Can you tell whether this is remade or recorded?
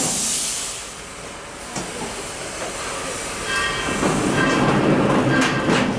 recorded